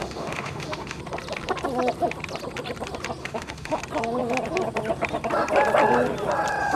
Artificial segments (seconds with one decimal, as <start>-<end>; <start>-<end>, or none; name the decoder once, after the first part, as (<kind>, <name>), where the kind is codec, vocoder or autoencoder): 0.0-1.0 (autoencoder, DAC-VAE); 3.2-3.8